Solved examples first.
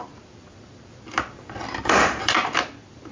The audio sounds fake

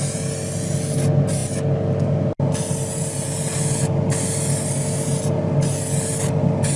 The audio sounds real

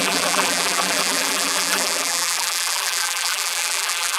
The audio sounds fake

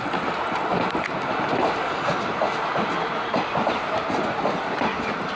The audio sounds real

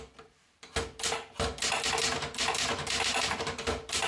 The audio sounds fake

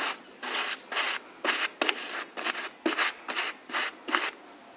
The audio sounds real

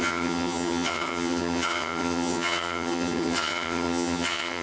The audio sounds fake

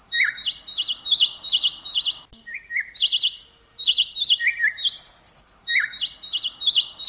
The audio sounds real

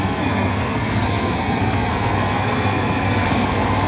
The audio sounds fake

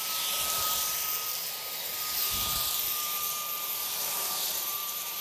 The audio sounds fake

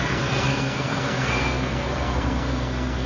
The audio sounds fake